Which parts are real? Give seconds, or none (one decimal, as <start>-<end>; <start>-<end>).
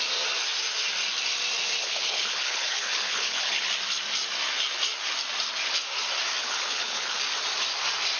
0.0-1.8; 3.7-6.4; 7.2-8.2